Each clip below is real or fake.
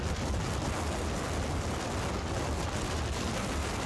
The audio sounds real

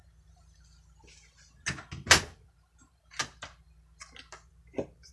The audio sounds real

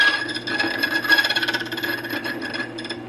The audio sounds real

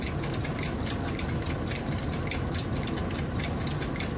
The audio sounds real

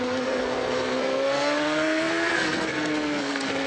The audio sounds fake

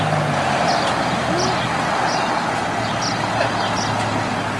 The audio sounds real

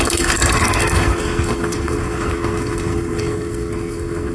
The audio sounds fake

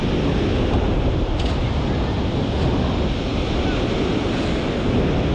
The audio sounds real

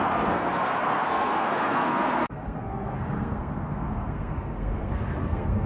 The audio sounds fake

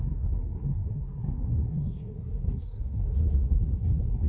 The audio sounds fake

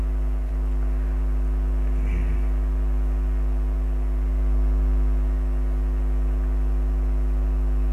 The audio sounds real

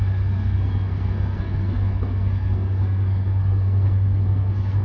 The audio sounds fake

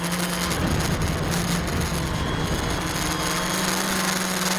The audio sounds real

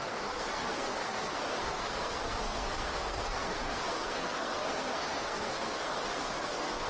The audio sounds fake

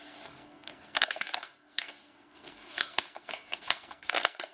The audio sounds fake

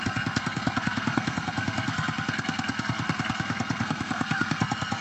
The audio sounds fake